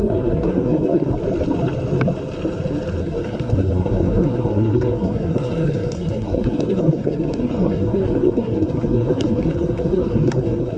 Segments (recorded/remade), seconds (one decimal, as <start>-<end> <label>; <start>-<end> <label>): 0.0-1.1 remade; 1.1-3.0 recorded; 3.0-10.8 remade